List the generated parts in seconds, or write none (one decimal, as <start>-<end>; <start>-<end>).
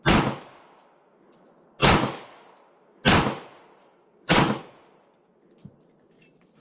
1.8-2.5; 3.8-4.6